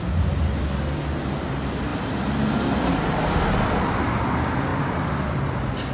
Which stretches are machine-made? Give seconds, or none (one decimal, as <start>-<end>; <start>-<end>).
none